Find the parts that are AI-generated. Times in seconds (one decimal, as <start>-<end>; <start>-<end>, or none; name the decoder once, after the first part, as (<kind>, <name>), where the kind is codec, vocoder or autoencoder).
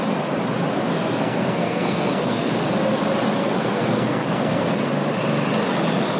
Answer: 0.9-2.5 (codec, SNAC); 3.4-4.9